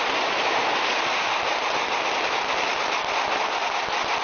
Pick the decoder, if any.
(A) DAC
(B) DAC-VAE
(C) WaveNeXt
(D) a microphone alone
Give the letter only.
D